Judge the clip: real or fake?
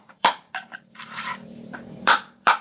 fake